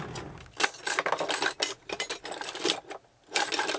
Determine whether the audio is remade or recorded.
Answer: recorded